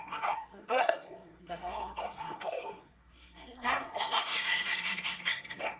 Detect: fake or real fake